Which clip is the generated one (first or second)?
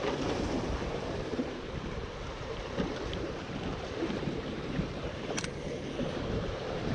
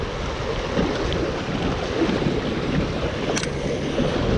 first